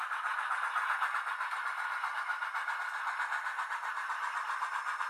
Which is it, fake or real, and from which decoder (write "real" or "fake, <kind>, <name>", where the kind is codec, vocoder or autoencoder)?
real